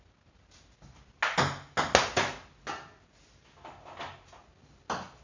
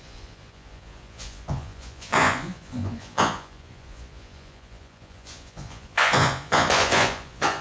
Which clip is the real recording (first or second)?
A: first